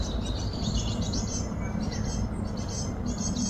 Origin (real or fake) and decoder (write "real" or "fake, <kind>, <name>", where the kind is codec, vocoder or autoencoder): real